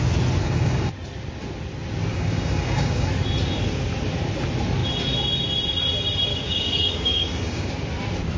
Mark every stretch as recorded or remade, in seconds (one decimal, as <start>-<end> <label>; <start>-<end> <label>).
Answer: 0.0-0.4 recorded; 0.4-0.9 remade; 0.9-2.1 recorded; 2.1-3.1 remade; 3.1-6.3 recorded; 6.3-7.7 remade; 7.7-8.4 recorded